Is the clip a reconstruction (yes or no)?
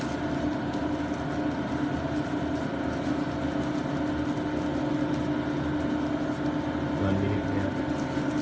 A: no